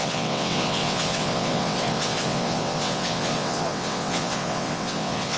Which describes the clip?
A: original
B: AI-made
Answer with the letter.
B